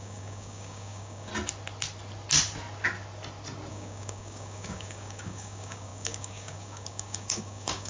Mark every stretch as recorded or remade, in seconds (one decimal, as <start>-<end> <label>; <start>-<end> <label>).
0.0-1.3 remade; 1.3-3.7 recorded; 3.7-7.9 remade